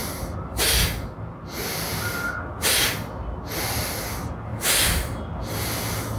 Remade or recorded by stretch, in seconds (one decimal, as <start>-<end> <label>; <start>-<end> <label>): 0.0-6.2 recorded

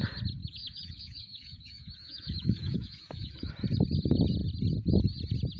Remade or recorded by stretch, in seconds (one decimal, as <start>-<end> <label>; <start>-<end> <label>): 0.0-0.4 recorded; 0.4-3.5 remade; 3.5-5.6 recorded

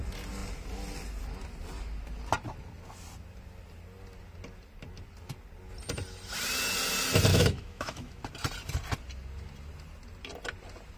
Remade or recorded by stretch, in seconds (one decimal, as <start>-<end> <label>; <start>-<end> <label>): 0.0-7.3 recorded; 7.3-8.2 remade; 8.2-11.0 recorded